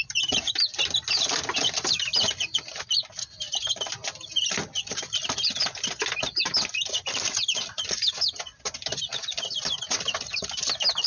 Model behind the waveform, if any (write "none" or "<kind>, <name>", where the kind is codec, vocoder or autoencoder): none